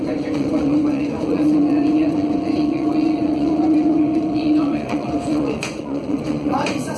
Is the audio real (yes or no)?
no